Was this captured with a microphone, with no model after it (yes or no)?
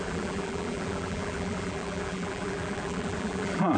no